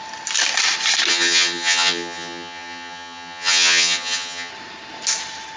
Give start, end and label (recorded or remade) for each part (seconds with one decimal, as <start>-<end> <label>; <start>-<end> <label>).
0.0-1.1 recorded; 1.1-4.5 remade; 4.5-5.6 recorded